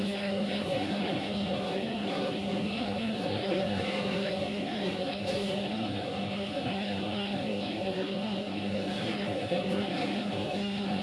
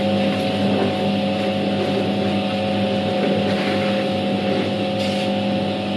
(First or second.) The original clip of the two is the second